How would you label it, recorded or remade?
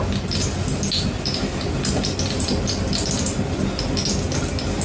recorded